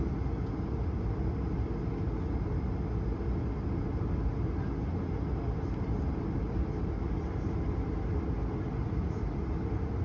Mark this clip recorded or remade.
recorded